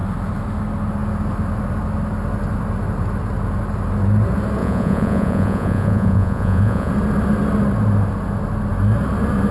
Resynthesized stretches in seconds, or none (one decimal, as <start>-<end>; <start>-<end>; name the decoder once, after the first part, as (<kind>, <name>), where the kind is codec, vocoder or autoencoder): 4.6-6.9 (vocoder, Vocos)